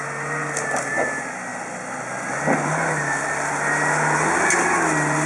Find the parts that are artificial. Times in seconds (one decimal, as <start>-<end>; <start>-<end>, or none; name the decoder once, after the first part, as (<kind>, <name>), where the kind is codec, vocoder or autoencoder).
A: none